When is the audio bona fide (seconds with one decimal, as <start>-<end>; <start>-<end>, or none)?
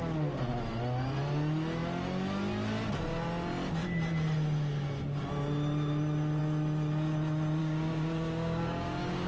0.0-7.6